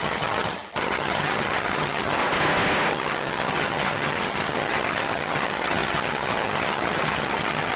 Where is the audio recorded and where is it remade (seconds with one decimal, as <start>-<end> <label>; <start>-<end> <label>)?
0.0-2.2 remade; 2.2-2.9 recorded; 2.9-7.8 remade